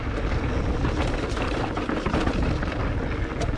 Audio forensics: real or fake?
real